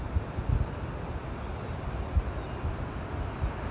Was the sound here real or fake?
real